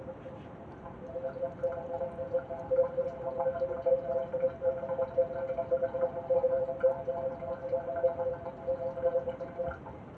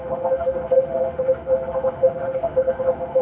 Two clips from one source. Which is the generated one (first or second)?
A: second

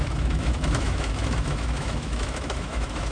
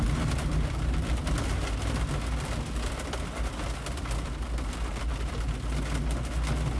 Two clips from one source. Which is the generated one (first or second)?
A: first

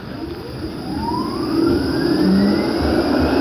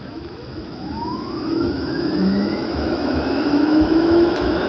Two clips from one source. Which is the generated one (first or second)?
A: second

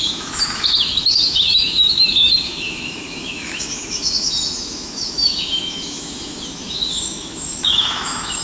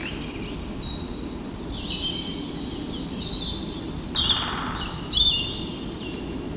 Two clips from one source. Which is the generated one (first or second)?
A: first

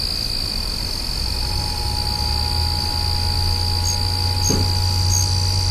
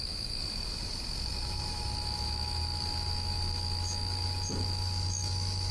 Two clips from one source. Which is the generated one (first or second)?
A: second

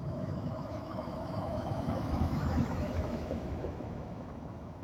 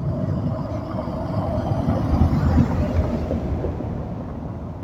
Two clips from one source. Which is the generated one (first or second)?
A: first